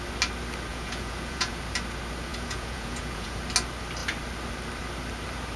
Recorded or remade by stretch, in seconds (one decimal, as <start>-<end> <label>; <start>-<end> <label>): 0.0-0.7 recorded; 0.7-1.6 remade; 1.6-2.3 recorded; 2.3-3.4 remade; 3.4-5.6 recorded